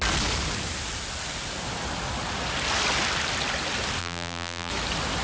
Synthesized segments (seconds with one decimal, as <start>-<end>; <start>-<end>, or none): 4.0-4.7